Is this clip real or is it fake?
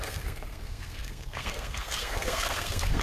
fake